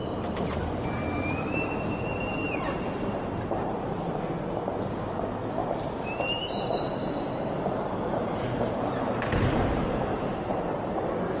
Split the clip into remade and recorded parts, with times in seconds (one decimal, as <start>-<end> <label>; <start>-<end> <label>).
0.0-3.4 remade; 3.4-5.6 recorded; 5.6-10.0 remade; 10.0-11.4 recorded